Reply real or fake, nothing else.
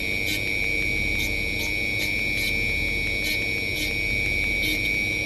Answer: real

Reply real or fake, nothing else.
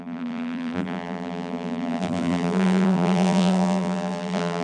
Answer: fake